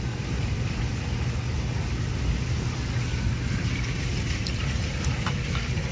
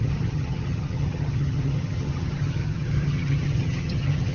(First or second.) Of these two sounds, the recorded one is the first